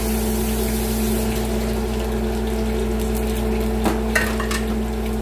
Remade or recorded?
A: recorded